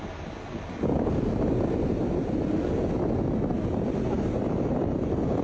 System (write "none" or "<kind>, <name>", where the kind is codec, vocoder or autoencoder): none